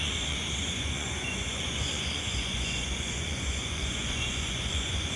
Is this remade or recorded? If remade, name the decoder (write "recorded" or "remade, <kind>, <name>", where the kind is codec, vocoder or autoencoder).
remade, vocoder, Vocos